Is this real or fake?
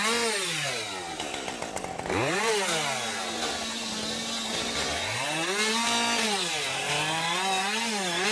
real